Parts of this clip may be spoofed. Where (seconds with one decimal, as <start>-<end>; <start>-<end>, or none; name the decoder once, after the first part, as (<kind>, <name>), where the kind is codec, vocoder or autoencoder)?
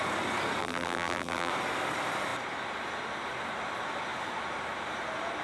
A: 0.6-1.5 (vocoder, BigVGAN v2)